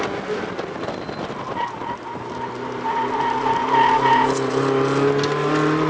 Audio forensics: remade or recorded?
recorded